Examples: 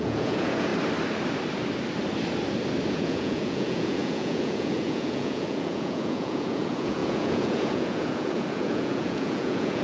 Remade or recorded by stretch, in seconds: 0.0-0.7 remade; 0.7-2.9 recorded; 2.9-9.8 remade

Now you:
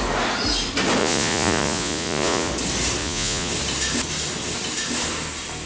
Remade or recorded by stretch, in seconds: 0.0-1.0 recorded; 1.0-2.5 remade; 2.5-3.0 recorded; 3.0-3.5 remade; 3.5-5.7 recorded

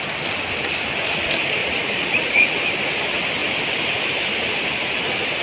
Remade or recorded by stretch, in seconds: 0.0-1.6 recorded; 1.6-2.6 remade; 2.6-5.4 recorded

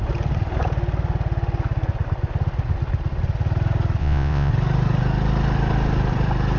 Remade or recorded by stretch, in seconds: 0.0-4.0 recorded; 4.0-4.5 remade; 4.5-6.6 recorded

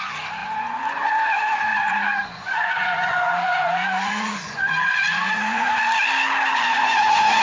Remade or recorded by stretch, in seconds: 0.0-0.4 recorded; 0.4-1.1 remade; 1.1-1.7 recorded; 1.7-5.8 remade; 5.8-6.5 recorded; 6.5-7.4 remade

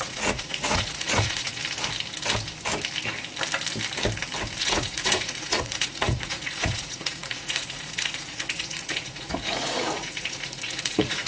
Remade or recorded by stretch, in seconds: 0.0-1.6 remade; 1.6-4.6 recorded; 4.6-11.3 remade

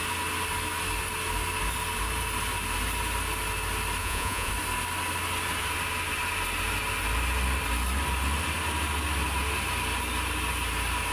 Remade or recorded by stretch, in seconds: 0.0-4.0 recorded; 4.0-4.5 remade; 4.5-11.1 recorded

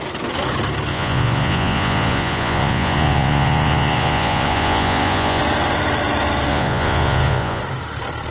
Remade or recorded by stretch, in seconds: 0.0-0.9 recorded; 0.9-5.4 remade; 5.4-6.5 recorded; 6.5-7.6 remade; 7.6-8.3 recorded